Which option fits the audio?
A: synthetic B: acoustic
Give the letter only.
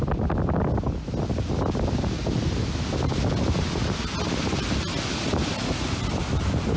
B